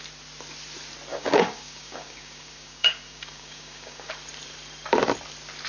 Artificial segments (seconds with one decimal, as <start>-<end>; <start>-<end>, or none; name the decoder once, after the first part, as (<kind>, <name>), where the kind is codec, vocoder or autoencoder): 1.1-4.1 (codec, DAC)